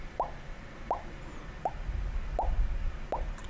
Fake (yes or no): no